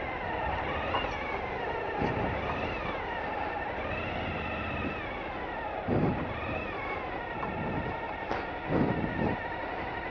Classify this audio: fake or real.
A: real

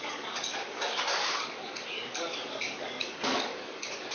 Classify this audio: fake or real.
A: fake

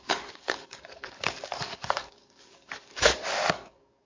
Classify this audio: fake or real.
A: fake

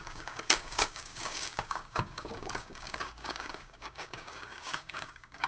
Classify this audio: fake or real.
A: fake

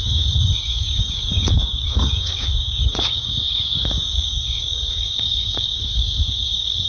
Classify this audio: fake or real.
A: fake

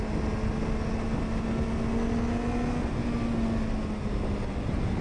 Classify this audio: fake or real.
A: real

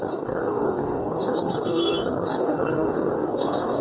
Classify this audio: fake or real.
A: fake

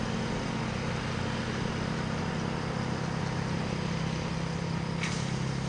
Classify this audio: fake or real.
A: real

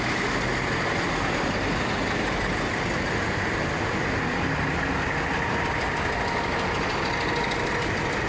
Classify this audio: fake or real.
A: real